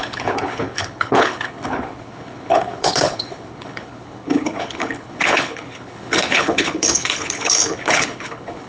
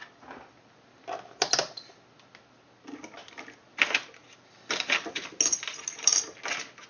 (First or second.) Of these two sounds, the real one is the second